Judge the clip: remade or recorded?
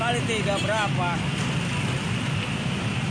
recorded